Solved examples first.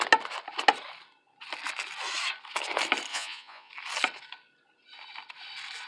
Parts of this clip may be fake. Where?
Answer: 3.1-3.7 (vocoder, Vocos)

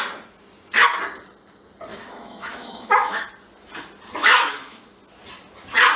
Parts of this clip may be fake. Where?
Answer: 1.9-3.3 (autoencoder, DAC-VAE); 4.2-4.8

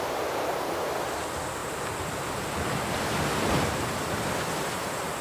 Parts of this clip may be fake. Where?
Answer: 1.6-4.7 (vocoder, BigVGAN v2)

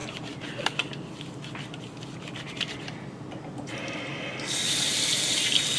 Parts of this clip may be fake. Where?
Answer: none

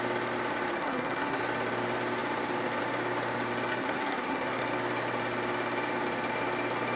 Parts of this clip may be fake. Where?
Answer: 0.7-1.4 (codec, SNAC); 3.7-4.6

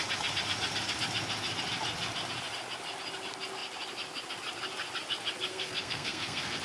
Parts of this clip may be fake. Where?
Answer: 5.5-6.6 (codec, SNAC)

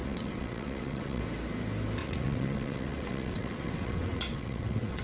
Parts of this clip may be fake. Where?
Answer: 0.0-1.2 (vocoder, WaveNeXt); 2.0-5.0

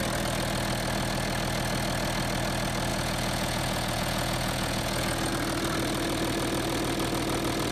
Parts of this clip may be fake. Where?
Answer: 2.9-5.3 (vocoder, Vocos)